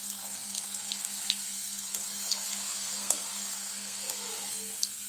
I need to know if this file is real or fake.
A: fake